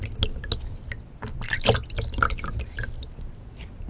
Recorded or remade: recorded